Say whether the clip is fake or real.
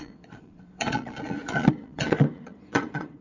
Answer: fake